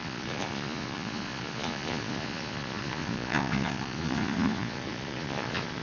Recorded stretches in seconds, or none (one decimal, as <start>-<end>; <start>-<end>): none